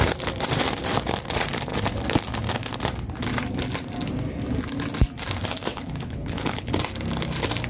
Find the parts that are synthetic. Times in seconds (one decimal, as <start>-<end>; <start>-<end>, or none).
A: 5.7-6.7